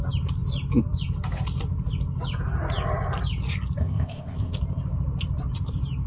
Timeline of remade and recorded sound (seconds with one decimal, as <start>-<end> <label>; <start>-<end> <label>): 0.0-3.8 recorded; 3.8-4.5 remade; 4.5-6.1 recorded